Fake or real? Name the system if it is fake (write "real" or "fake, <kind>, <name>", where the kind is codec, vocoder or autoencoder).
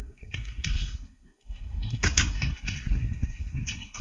fake, codec, SNAC